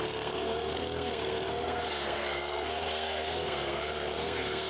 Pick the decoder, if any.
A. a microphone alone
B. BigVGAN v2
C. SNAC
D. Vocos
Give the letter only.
C